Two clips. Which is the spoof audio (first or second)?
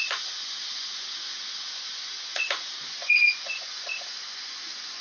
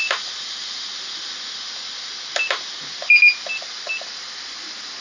first